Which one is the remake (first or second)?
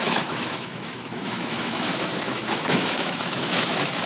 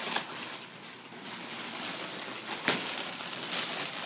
first